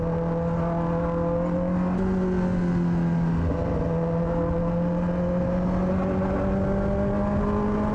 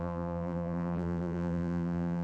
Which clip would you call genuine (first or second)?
first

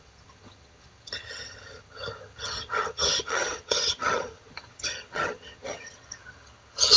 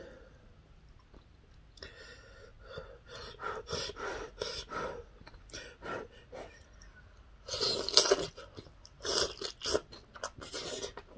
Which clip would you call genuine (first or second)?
second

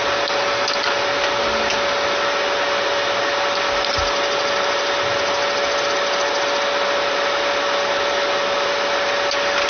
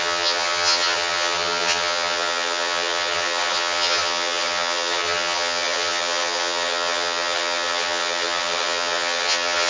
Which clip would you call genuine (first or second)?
first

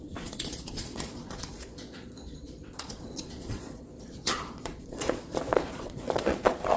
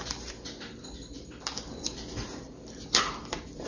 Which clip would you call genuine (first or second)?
second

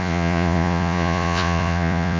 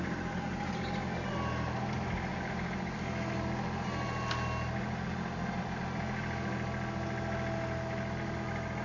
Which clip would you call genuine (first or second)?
second